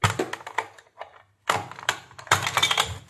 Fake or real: real